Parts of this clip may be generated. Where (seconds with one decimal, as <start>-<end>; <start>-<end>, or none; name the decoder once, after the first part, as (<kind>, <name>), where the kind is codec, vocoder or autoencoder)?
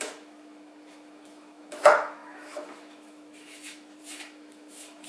0.0-5.1 (autoencoder, DAC-VAE)